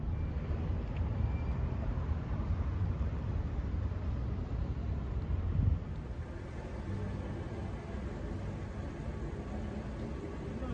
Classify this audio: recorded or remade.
recorded